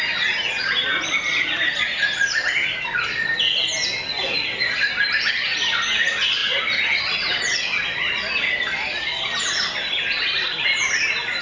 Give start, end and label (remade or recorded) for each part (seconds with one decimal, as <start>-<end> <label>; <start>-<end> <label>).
0.0-11.4 recorded